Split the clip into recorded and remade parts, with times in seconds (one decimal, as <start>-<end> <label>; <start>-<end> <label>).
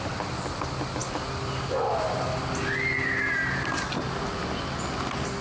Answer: 0.0-5.4 recorded